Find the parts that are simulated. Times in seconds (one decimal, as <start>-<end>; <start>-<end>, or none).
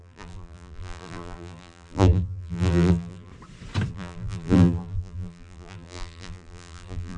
0.0-3.3; 3.9-7.2